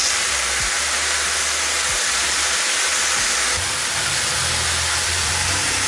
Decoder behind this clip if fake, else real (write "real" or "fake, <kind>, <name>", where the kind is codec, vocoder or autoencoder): fake, vocoder, BigVGAN v2